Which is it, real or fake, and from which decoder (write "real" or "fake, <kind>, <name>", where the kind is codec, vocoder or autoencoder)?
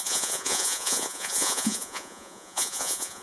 fake, vocoder, Vocos